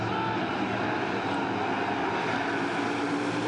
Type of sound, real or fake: real